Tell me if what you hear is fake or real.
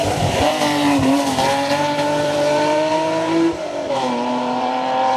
fake